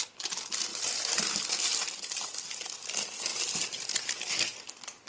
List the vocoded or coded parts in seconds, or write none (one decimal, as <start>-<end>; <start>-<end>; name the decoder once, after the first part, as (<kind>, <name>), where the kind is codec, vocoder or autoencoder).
none